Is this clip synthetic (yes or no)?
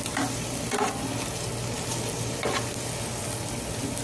no